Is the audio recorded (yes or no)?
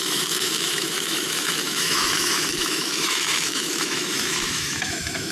no